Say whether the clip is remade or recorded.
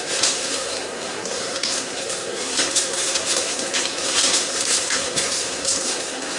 remade